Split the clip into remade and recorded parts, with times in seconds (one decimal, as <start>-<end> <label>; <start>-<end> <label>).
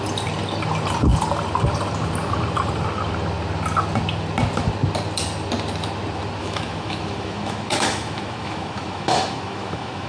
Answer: 0.0-6.4 recorded; 6.4-10.1 remade